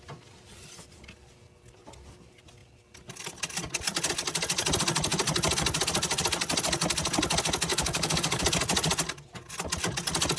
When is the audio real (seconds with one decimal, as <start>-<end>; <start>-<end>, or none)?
0.0-7.7; 8.4-10.4